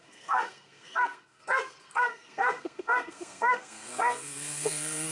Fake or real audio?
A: fake